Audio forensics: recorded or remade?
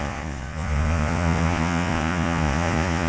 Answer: remade